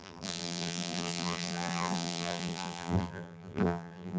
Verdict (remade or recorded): remade